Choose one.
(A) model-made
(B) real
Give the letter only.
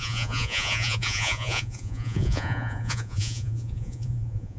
A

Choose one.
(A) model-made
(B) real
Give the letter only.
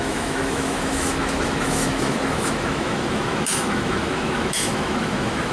A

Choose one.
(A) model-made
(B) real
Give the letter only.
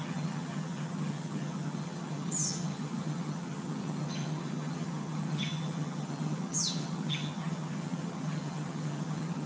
A